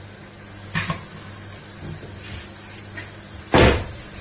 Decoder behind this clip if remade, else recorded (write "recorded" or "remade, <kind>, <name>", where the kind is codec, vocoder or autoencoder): recorded